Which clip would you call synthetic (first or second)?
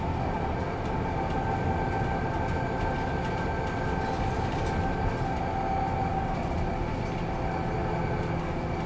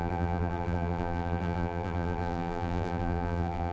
second